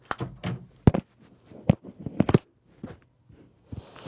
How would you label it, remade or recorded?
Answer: recorded